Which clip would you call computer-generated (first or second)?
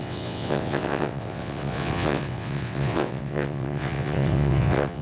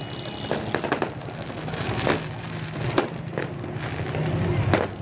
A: first